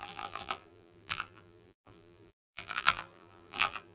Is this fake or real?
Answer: fake